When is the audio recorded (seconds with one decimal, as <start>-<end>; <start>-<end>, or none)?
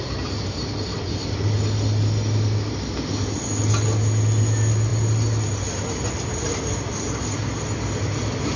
0.0-8.6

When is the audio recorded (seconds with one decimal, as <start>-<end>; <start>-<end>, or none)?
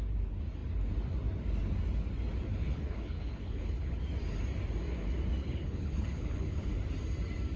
0.0-2.5; 4.0-5.4; 6.7-7.6